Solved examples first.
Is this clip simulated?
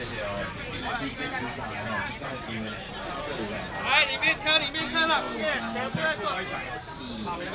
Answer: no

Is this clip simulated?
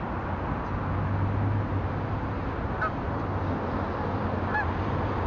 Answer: no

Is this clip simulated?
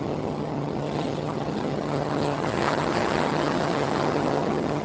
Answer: yes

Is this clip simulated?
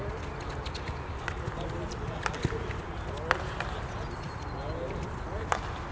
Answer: no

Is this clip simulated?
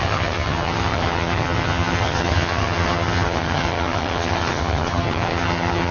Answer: yes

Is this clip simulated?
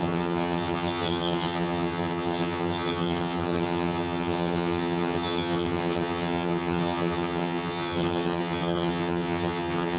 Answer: yes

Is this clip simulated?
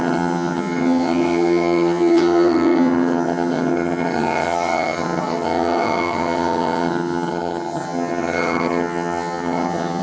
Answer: yes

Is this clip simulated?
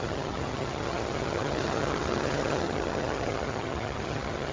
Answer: yes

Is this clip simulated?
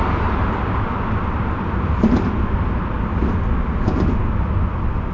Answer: no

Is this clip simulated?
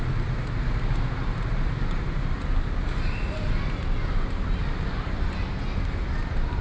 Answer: no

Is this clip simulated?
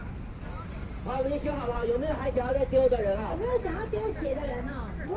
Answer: no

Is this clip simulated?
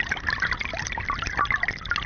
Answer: no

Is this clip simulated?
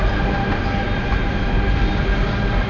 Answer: no